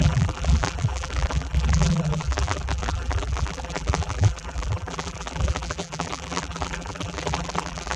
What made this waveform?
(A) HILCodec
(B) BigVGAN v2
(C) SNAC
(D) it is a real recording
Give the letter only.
B